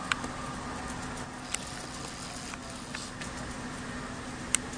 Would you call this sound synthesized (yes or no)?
no